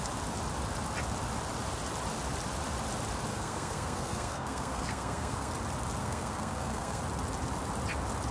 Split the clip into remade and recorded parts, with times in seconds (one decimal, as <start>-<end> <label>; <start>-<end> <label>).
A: 0.0-3.3 recorded; 3.3-5.5 remade; 5.5-6.0 recorded; 6.0-7.0 remade; 7.0-8.3 recorded